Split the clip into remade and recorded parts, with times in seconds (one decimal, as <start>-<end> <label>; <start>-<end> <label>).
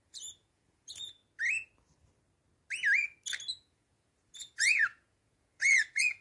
0.0-1.2 remade; 1.2-3.5 recorded; 3.5-6.2 remade